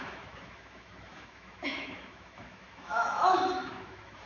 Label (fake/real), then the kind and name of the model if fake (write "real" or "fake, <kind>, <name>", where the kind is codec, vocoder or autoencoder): fake, autoencoder, DAC-VAE